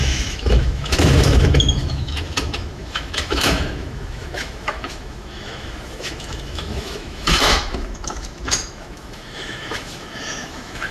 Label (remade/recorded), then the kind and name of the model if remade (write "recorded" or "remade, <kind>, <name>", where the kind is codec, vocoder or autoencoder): remade, autoencoder, DAC-VAE